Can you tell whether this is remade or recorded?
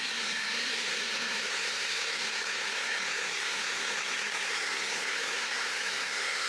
remade